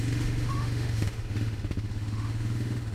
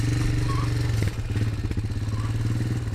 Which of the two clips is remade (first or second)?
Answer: first